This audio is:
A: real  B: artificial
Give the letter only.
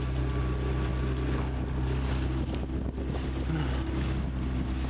A